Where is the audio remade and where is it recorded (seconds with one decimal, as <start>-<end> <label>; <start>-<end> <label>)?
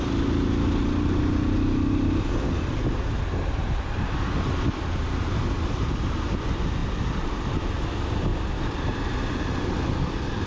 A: 0.0-6.8 recorded; 6.8-7.6 remade; 7.6-10.5 recorded